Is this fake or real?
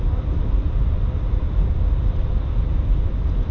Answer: real